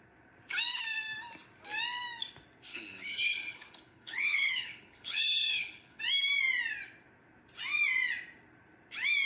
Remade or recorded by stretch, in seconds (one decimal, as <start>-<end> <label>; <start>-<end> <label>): 0.0-2.7 recorded; 2.7-6.0 remade; 6.0-9.3 recorded